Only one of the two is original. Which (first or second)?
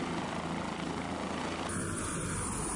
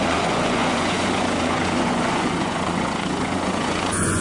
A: first